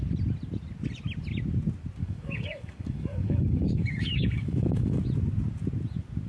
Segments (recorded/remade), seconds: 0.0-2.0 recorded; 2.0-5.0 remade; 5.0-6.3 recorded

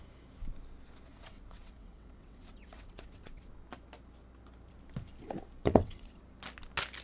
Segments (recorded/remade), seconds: 0.0-1.1 recorded; 1.1-3.5 remade; 3.5-5.6 recorded; 5.6-6.2 remade; 6.2-7.0 recorded

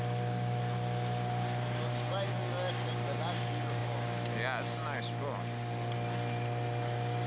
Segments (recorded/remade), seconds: 0.0-7.3 recorded

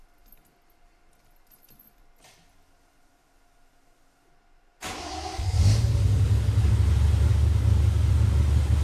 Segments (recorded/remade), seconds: 0.0-5.3 recorded; 5.3-6.7 remade; 6.7-7.3 recorded; 7.3-8.1 remade; 8.1-8.8 recorded

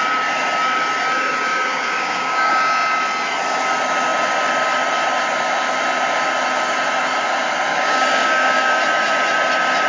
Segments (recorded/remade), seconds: 0.0-1.5 recorded; 1.5-2.5 remade; 2.5-7.7 recorded; 7.7-8.8 remade; 8.8-9.9 recorded

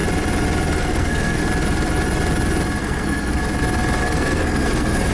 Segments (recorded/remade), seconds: 0.0-0.8 recorded; 0.8-1.4 remade; 1.4-2.8 recorded; 2.8-3.4 remade; 3.4-4.0 recorded; 4.0-5.1 remade